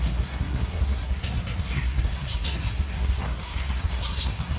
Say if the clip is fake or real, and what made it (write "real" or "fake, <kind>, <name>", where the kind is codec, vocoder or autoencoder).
fake, codec, SNAC